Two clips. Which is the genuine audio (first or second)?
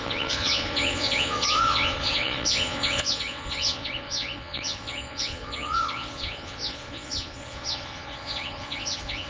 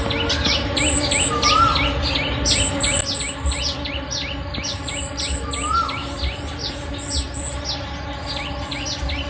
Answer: second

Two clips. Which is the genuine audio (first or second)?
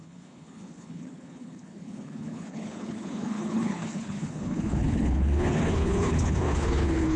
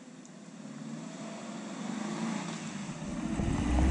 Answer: second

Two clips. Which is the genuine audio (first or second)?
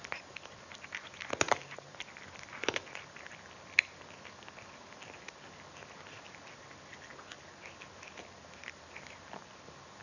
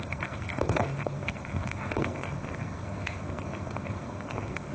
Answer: first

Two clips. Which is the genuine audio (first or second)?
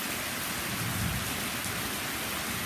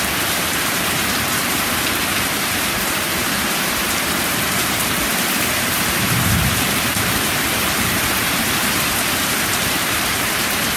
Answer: first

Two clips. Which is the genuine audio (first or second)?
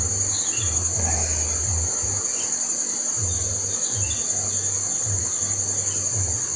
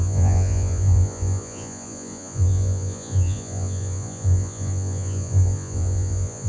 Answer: first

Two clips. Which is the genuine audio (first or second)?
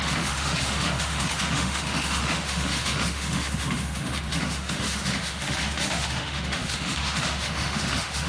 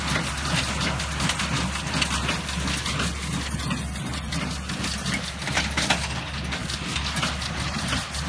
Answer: second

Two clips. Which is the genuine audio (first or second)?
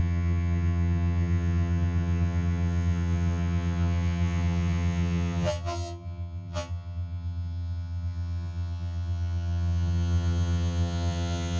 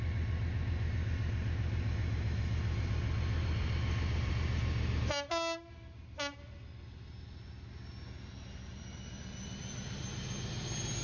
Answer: second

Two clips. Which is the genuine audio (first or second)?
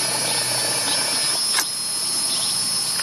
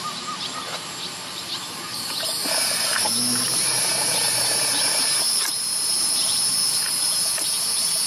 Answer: first